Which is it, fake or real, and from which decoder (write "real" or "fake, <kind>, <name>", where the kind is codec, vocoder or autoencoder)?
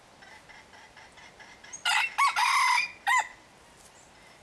real